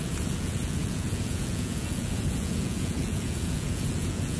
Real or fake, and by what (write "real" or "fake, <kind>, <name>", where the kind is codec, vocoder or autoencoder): fake, vocoder, Vocos